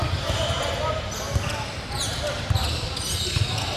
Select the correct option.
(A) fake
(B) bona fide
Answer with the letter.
B